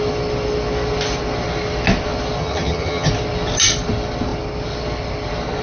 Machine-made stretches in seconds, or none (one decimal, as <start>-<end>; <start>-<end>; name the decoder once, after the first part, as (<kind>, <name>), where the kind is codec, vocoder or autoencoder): 2.4-3.1 (vocoder, HiFi-GAN)